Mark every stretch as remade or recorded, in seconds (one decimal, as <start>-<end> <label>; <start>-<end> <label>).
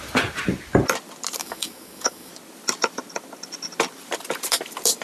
0.0-1.4 recorded; 1.4-2.3 remade; 2.3-5.0 recorded